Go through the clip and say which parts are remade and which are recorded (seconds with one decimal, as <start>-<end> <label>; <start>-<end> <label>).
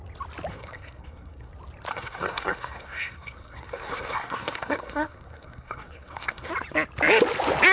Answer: 0.0-0.5 recorded; 0.5-1.5 remade; 1.5-1.9 recorded; 1.9-6.5 remade; 6.5-7.7 recorded